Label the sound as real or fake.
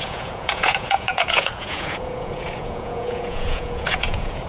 fake